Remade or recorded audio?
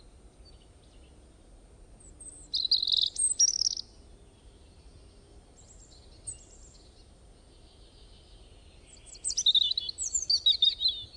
recorded